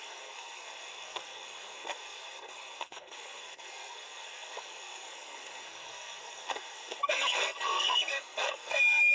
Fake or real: fake